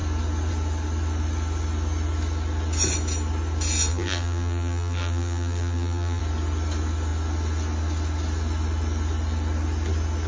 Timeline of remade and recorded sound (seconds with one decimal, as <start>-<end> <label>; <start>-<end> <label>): 0.0-3.9 recorded; 3.9-6.2 remade; 6.2-10.3 recorded